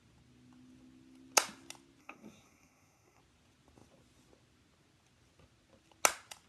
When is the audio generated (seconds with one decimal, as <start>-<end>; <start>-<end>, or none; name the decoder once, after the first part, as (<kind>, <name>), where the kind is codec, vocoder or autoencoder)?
2.0-3.2 (codec, SNAC)